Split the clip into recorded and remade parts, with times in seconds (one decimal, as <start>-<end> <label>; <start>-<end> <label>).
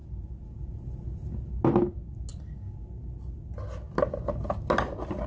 0.0-1.5 remade; 1.5-5.3 recorded